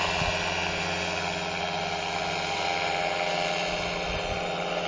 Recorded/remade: recorded